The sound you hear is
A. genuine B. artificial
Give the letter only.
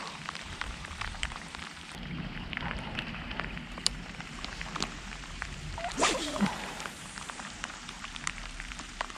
B